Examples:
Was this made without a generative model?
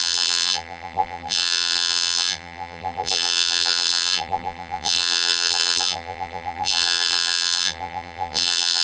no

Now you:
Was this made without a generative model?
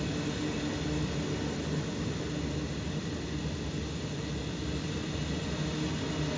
yes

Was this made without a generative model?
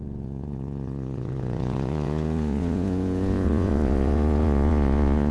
no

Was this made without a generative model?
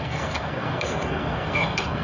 no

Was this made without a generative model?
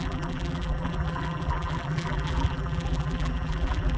no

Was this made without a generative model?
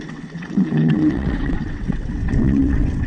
no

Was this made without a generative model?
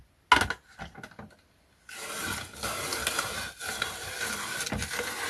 yes